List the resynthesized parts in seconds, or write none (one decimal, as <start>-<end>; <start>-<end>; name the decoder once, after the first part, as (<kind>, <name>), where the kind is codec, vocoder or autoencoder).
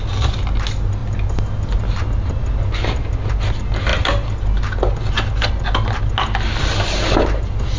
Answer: none